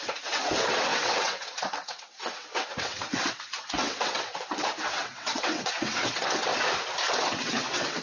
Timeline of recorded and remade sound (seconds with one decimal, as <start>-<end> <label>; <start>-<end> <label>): 0.0-6.5 remade; 6.5-7.2 recorded; 7.2-8.0 remade